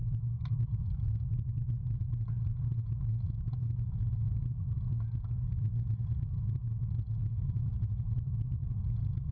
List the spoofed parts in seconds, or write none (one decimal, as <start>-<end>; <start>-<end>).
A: none